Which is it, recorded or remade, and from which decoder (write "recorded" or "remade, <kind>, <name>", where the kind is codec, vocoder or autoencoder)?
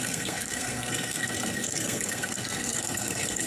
remade, codec, SNAC